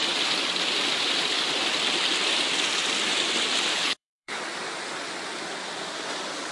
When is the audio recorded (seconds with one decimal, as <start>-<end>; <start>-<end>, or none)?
0.0-3.7; 4.4-6.5